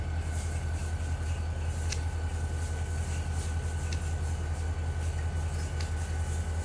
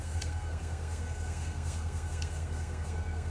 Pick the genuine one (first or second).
first